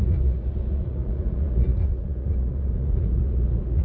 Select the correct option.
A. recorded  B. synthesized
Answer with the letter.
B